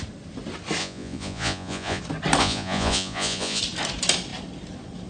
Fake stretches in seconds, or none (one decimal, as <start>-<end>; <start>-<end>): 0.8-2.0; 2.4-3.6